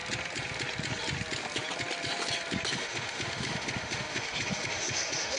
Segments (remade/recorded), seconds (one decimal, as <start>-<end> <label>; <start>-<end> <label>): 0.0-2.7 recorded; 2.7-5.4 remade